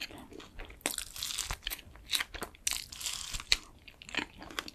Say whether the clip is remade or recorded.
recorded